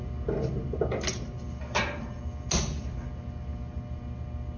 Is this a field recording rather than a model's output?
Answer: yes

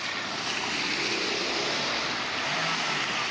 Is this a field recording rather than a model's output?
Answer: yes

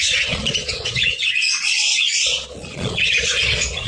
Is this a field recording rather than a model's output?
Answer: no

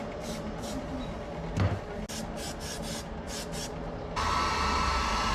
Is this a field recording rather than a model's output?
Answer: yes